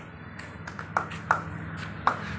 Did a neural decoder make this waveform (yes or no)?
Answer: no